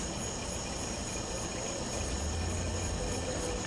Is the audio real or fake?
real